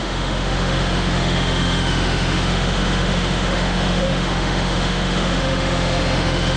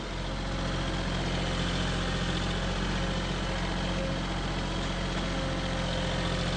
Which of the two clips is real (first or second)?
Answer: second